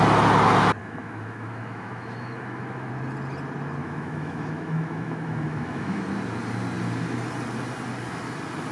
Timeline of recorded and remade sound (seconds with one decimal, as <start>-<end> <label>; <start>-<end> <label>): 0.0-0.8 recorded; 0.8-2.9 remade; 2.9-3.8 recorded; 3.8-6.0 remade; 6.0-8.7 recorded